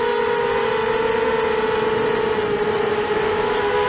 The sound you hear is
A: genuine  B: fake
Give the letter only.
A